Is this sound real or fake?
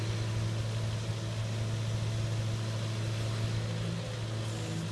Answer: real